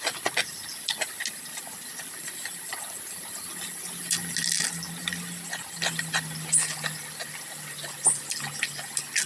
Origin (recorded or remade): recorded